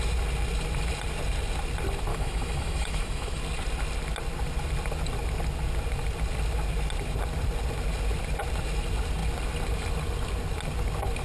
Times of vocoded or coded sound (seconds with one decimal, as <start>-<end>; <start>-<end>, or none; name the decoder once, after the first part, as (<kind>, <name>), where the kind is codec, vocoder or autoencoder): 2.1-3.4 (autoencoder, DAC-VAE)